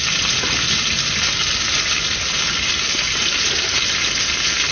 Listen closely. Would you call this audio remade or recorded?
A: recorded